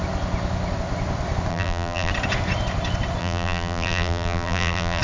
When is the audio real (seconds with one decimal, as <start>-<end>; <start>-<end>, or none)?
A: 0.0-1.5; 2.1-3.2